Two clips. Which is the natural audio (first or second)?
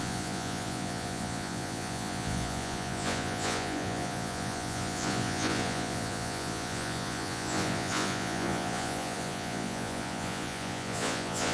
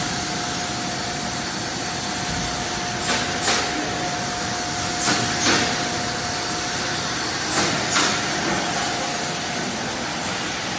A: second